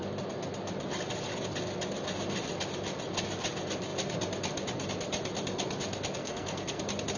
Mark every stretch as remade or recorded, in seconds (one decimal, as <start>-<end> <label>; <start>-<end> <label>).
0.0-6.2 recorded; 6.2-6.8 remade; 6.8-7.2 recorded

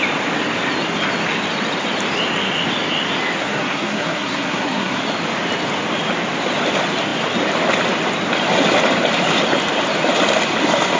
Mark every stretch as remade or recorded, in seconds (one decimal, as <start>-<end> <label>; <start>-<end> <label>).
0.0-3.4 recorded; 3.4-5.0 remade; 5.0-11.0 recorded

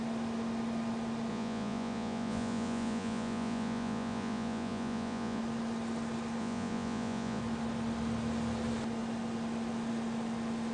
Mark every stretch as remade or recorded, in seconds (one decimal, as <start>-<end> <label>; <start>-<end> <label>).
0.0-1.3 recorded; 1.3-5.4 remade; 5.4-6.4 recorded; 6.4-7.4 remade; 7.4-10.7 recorded